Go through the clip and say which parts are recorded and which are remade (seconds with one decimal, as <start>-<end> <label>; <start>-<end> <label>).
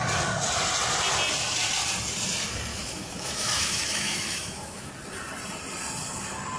0.0-2.7 recorded; 2.7-4.9 remade; 4.9-6.6 recorded